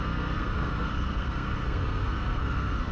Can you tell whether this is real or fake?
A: fake